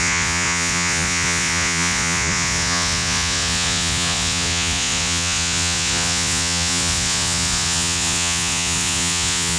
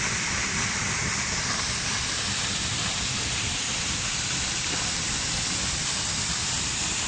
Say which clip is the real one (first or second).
second